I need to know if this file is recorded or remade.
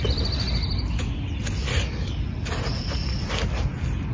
recorded